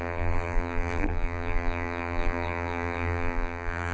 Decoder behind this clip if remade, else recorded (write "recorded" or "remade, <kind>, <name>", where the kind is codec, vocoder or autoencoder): remade, vocoder, BigVGAN v2